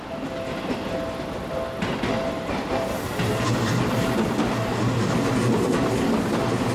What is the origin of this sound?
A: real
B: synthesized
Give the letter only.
A